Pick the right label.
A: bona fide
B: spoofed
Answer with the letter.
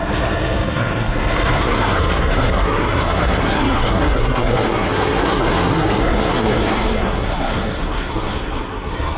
B